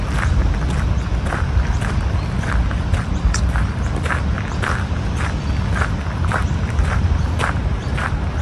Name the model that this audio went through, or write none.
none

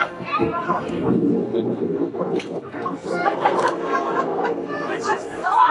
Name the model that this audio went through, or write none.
codec, SNAC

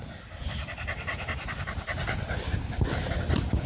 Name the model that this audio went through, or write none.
none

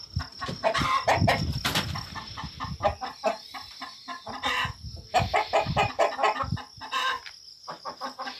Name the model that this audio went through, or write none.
none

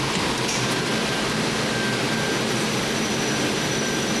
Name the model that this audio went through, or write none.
none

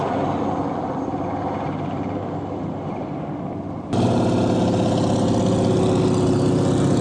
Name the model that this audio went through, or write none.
none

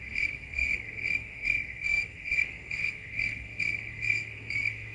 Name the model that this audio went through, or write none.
codec, SNAC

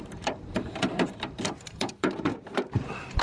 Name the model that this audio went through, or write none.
vocoder, BigVGAN v2